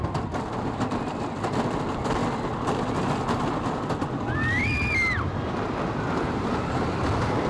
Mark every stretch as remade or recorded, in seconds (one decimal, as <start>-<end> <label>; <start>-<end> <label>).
0.0-7.5 recorded